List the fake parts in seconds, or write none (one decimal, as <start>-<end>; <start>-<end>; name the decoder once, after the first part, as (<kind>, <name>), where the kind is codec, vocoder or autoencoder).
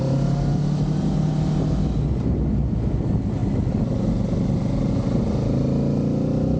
none